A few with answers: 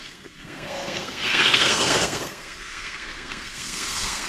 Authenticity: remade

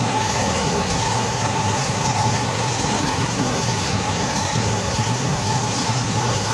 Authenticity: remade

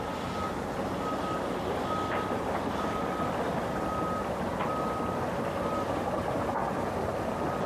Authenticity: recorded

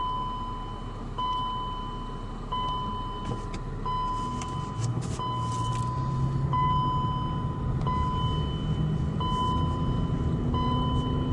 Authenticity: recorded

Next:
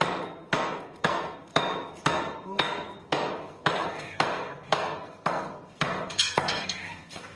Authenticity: remade